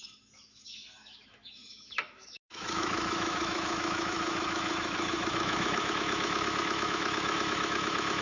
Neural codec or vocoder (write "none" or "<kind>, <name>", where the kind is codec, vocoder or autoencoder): autoencoder, DAC-VAE